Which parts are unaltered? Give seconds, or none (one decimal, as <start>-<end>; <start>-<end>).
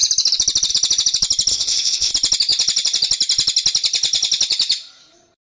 0.0-1.5; 2.1-5.5